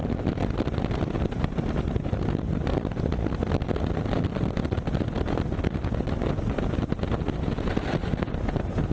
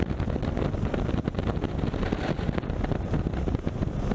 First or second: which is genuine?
first